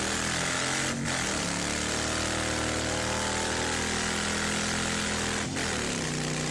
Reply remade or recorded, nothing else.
recorded